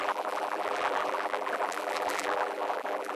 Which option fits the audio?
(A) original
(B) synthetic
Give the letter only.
B